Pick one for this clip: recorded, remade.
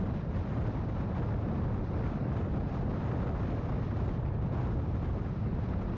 recorded